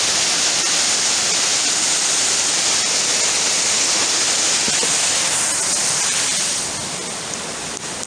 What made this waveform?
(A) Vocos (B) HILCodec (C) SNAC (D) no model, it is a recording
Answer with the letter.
D